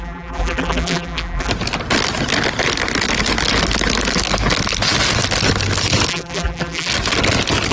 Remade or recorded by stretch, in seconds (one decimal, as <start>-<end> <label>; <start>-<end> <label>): 0.0-1.5 remade; 1.5-6.1 recorded; 6.1-6.9 remade; 6.9-7.7 recorded